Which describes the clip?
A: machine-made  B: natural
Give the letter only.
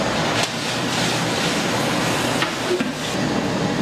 A